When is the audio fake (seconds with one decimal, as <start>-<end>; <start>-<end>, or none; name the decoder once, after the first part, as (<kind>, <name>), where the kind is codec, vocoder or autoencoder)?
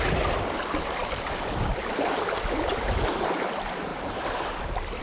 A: none